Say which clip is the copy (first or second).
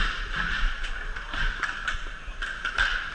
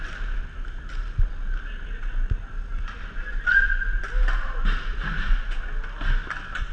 first